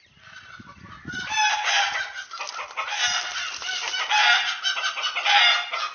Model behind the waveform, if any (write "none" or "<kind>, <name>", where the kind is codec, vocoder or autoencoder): none